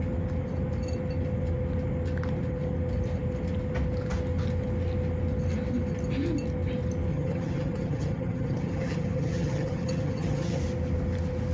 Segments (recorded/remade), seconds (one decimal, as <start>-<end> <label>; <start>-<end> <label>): 0.0-7.1 recorded; 7.1-10.6 remade; 10.6-11.5 recorded